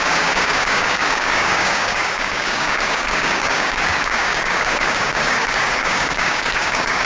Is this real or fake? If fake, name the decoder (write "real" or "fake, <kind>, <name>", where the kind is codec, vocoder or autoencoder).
fake, codec, DAC